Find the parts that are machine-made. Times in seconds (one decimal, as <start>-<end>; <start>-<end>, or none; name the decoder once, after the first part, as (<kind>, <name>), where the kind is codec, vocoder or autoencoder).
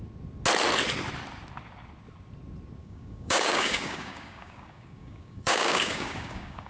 2.8-6.7 (codec, DAC)